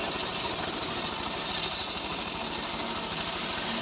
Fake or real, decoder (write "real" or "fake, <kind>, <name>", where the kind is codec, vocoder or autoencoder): real